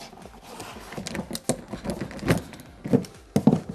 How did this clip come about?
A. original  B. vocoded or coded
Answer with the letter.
A